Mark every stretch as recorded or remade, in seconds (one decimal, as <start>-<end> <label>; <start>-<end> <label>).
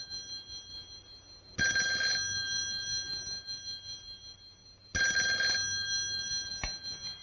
0.0-7.2 recorded